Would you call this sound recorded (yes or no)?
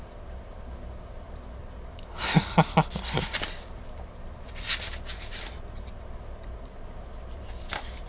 no